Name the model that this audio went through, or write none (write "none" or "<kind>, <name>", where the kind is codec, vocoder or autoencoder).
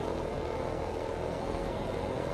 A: codec, SNAC